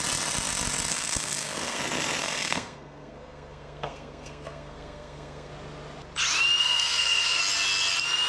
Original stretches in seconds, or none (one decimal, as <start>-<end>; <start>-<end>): 0.0-0.9; 1.8-2.2; 5.5-6.6; 7.4-8.3